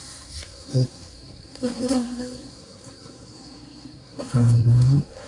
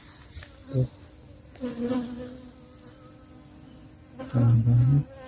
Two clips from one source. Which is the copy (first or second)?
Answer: first